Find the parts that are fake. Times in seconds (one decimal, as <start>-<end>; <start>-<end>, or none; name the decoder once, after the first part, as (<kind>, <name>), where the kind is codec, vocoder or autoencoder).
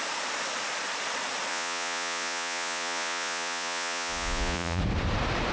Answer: 1.5-4.8 (vocoder, Vocos)